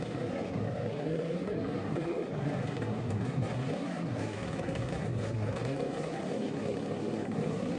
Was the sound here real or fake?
fake